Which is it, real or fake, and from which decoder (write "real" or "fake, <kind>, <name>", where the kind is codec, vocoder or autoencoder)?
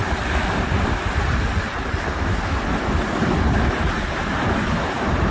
real